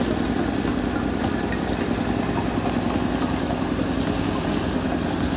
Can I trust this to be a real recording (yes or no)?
yes